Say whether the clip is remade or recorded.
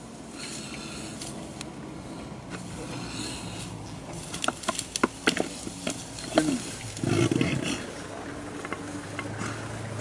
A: recorded